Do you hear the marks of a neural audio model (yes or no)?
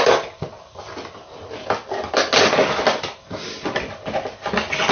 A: no